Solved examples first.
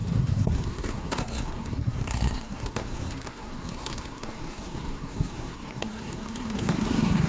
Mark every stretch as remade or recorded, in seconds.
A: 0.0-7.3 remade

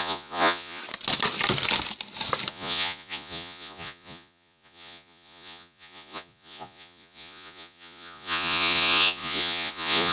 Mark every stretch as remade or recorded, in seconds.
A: 0.0-0.8 remade; 0.8-2.5 recorded; 2.5-10.1 remade

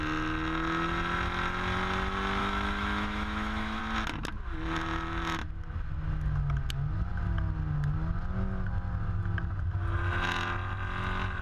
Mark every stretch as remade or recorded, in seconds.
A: 0.0-2.4 recorded; 2.4-3.8 remade; 3.8-11.4 recorded

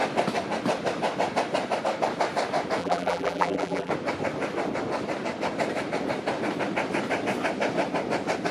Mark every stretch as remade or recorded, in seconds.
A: 0.0-2.8 recorded; 2.8-3.9 remade; 3.9-8.5 recorded